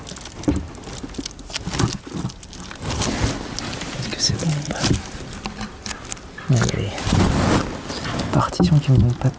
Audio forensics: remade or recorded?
recorded